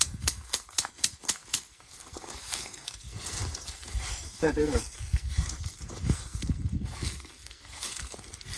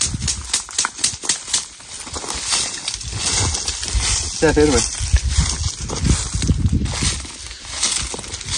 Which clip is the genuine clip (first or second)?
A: second